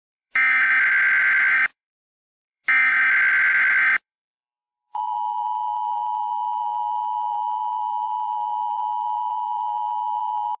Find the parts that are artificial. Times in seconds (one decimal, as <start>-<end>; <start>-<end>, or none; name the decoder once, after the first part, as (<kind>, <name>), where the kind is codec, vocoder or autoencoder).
0.0-10.6 (vocoder, BigVGAN v2)